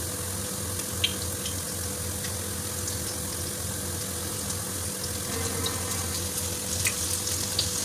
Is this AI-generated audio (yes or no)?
no